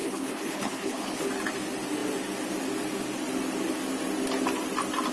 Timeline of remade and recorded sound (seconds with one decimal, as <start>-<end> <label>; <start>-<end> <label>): 0.0-1.3 remade; 1.3-5.1 recorded